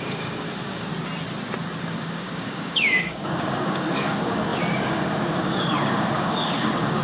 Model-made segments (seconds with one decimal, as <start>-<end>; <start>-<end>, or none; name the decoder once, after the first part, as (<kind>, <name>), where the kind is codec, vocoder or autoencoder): 0.0-0.9 (codec, DAC); 1.8-7.0

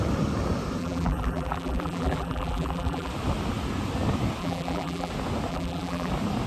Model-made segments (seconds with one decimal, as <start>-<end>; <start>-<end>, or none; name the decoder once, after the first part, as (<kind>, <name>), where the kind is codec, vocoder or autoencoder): 0.8-3.1 (vocoder, BigVGAN v2); 4.4-5.1; 5.5-6.1

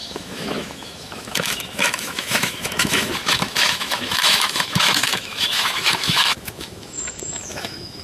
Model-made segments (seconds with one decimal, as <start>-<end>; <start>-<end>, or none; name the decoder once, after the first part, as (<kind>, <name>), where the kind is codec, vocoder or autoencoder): 0.0-8.0 (autoencoder, DAC-VAE)